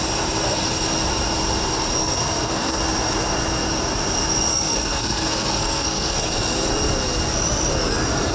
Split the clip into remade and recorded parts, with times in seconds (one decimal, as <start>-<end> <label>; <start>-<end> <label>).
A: 0.0-2.0 recorded; 2.0-2.8 remade; 2.8-4.5 recorded; 4.5-6.3 remade; 6.3-8.3 recorded